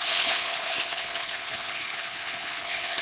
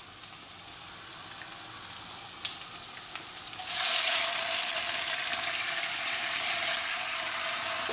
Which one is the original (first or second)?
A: second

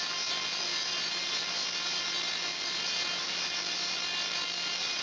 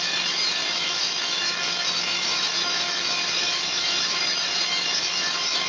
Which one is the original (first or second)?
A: first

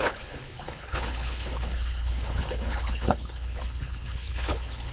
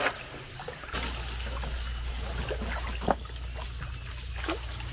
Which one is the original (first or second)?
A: second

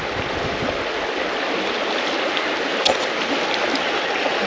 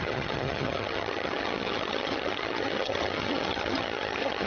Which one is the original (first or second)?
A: first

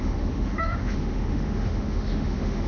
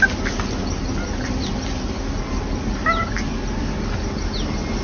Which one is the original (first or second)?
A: second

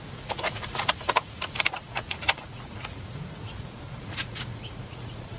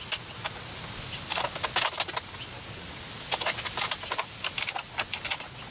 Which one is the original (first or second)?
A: second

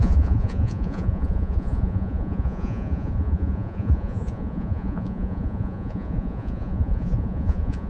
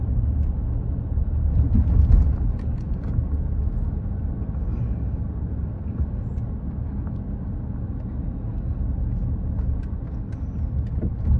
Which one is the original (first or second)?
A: second